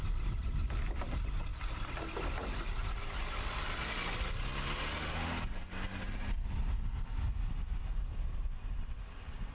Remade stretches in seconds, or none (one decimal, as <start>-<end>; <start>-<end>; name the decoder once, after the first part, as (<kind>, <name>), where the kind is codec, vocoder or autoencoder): none